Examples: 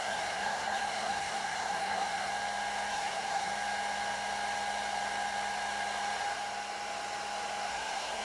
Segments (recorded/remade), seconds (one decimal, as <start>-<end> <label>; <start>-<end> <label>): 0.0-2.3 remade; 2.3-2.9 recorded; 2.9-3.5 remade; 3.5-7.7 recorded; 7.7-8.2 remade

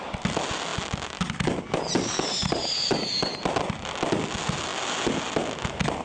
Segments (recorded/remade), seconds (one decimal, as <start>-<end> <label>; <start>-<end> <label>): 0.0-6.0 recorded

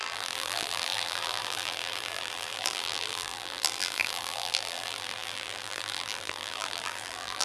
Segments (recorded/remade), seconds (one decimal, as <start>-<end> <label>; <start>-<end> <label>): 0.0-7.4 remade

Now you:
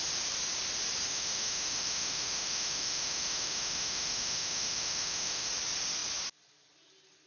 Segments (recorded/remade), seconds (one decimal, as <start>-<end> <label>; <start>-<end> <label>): 0.0-1.1 recorded; 1.1-5.5 remade; 5.5-7.3 recorded

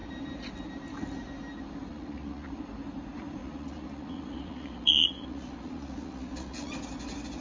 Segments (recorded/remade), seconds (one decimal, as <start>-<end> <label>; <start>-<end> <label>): 0.0-1.9 recorded; 1.9-2.5 remade; 2.5-3.4 recorded; 3.4-6.7 remade; 6.7-7.4 recorded

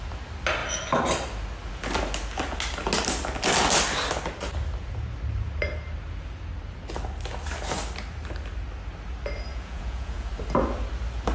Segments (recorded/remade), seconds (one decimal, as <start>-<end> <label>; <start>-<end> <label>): 0.0-9.5 recorded; 9.5-10.3 remade; 10.3-11.3 recorded

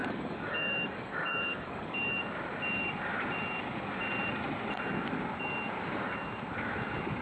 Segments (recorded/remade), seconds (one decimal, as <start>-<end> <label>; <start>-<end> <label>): 0.0-2.2 remade; 2.2-7.2 recorded